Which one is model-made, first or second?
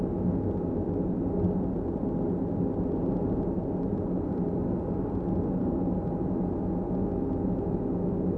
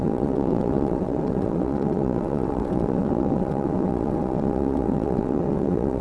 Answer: second